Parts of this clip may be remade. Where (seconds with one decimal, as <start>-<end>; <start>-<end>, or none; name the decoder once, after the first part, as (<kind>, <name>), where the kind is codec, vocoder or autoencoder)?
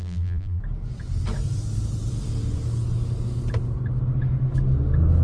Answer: 0.0-0.6 (vocoder, BigVGAN v2)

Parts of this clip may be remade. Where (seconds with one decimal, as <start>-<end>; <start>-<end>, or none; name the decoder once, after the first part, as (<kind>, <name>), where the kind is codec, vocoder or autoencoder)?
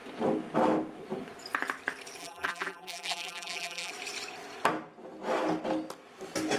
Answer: 2.2-3.9 (vocoder, BigVGAN v2)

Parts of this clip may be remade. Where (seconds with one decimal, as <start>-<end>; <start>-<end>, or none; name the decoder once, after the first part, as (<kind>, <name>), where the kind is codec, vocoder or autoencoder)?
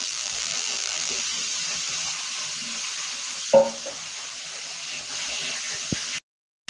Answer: 0.0-1.2 (vocoder, BigVGAN v2)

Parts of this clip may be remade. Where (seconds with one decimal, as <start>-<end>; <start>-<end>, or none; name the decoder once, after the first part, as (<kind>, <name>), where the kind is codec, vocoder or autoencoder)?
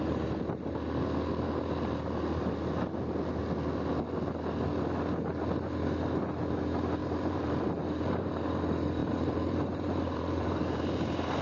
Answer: 7.0-8.3 (vocoder, BigVGAN v2); 9.0-11.0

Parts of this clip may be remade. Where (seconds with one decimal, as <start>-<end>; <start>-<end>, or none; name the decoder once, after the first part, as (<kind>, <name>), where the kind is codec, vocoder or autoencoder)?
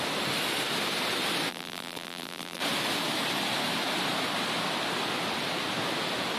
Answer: 1.5-2.6 (vocoder, BigVGAN v2)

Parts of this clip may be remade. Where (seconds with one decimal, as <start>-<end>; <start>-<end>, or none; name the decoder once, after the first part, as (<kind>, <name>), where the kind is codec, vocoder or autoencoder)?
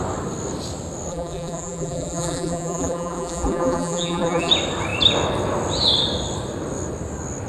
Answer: 1.1-4.5 (vocoder, BigVGAN v2)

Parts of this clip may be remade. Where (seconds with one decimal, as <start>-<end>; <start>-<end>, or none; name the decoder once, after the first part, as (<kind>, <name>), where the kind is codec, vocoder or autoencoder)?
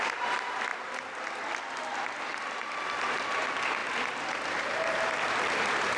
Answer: 0.0-0.7 (vocoder, BigVGAN v2); 1.8-3.8; 4.6-6.0